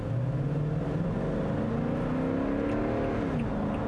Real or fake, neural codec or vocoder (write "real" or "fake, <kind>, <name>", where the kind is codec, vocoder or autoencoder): real